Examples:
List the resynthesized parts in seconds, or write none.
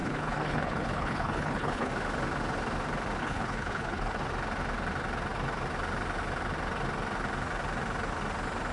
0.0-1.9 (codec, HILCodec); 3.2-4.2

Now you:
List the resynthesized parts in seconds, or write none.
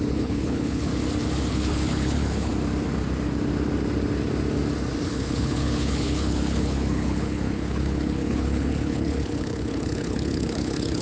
0.0-0.9 (codec, HILCodec); 1.5-2.5; 5.1-11.0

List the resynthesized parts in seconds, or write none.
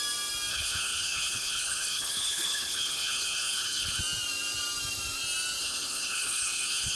0.5-4.0 (codec, HILCodec); 5.6-7.0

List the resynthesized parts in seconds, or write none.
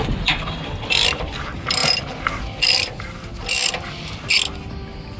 none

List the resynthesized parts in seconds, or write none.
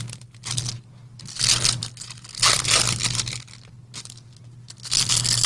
none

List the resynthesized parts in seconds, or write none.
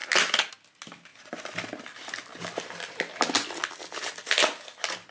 none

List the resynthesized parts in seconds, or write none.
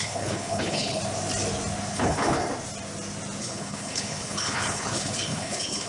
0.0-1.0 (codec, HILCodec); 1.9-2.4; 3.4-5.9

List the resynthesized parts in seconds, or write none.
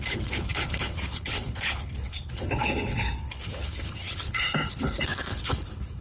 0.0-6.0 (codec, HILCodec)